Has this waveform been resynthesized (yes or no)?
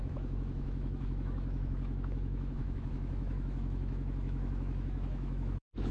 yes